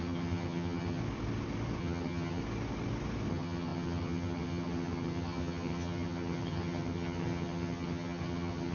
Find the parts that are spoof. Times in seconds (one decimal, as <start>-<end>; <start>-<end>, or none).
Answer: 0.0-1.0; 1.8-2.4; 3.3-8.7